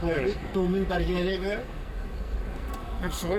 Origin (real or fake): fake